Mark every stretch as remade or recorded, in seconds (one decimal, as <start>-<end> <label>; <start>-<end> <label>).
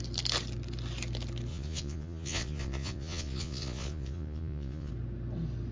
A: 0.0-1.5 recorded; 1.5-4.9 remade; 4.9-5.7 recorded